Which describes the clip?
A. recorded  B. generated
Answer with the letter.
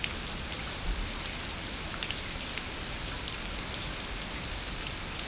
A